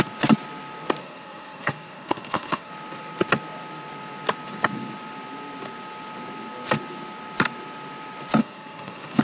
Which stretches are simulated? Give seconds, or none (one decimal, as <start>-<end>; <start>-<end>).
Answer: 1.0-2.7; 8.4-9.2